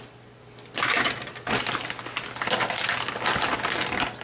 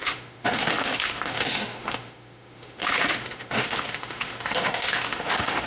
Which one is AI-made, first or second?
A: second